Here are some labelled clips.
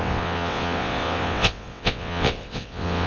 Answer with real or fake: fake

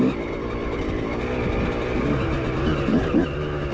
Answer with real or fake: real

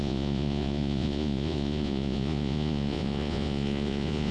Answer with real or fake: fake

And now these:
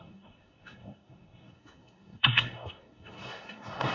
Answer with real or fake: fake